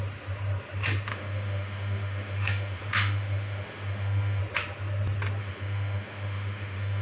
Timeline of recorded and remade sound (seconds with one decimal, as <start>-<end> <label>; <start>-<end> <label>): 0.0-1.1 recorded; 1.1-4.4 remade; 4.4-5.4 recorded; 5.4-7.0 remade